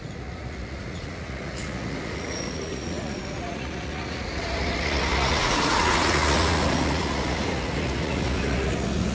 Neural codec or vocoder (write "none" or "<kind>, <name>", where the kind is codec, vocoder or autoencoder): vocoder, Vocos